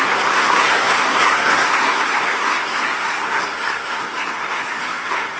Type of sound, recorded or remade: remade